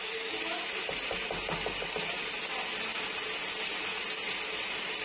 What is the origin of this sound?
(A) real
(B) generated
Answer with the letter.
A